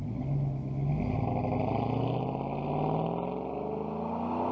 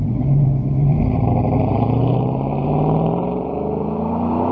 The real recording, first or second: first